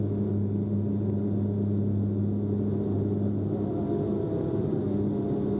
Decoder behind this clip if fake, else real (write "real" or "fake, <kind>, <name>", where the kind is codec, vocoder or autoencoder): real